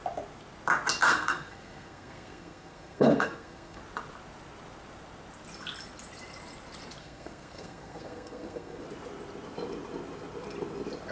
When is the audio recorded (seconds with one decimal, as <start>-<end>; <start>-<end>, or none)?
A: 0.0-1.0; 3.8-7.0; 8.8-11.1